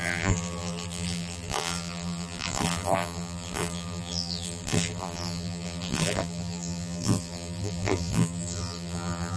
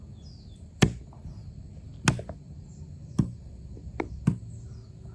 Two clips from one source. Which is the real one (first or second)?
second